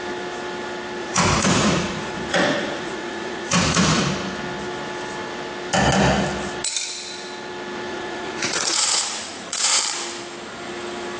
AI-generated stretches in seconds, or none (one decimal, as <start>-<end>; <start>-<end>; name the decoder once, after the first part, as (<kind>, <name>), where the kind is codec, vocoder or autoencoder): 1.0-4.0 (vocoder, Vocos); 7.9-9.8